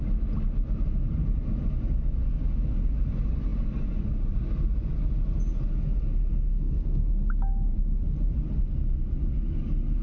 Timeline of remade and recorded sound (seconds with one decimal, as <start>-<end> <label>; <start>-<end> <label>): 0.0-6.3 recorded; 6.3-7.1 remade; 7.1-10.0 recorded